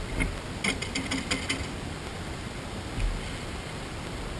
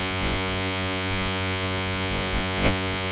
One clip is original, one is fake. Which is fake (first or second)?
second